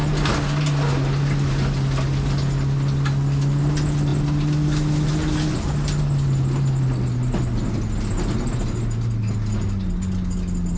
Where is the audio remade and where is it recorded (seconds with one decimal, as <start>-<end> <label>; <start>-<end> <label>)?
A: 0.0-10.8 recorded